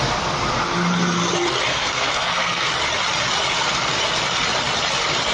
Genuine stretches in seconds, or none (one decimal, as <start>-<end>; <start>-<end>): 0.0-1.7; 2.7-5.3